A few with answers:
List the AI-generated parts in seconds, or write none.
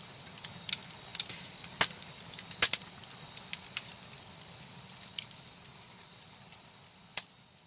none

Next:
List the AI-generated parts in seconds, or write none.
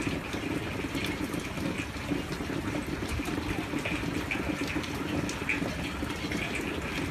none